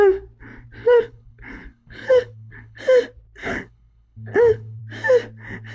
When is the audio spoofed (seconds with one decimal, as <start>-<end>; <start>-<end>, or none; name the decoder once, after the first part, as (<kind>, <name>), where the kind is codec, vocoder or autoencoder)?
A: 0.8-2.8 (codec, HILCodec); 3.4-4.8